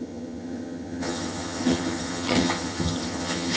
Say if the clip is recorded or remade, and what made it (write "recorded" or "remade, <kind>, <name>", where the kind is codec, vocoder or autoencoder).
remade, vocoder, HiFi-GAN